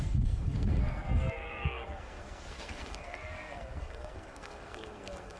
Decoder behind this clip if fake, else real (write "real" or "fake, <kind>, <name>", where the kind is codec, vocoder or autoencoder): fake, codec, SNAC